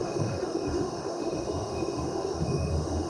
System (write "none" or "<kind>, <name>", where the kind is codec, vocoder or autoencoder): autoencoder, DAC-VAE